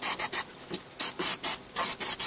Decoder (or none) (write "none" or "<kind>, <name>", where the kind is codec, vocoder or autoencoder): none